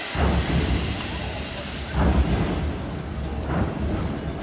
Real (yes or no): no